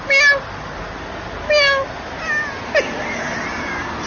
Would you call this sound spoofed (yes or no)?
no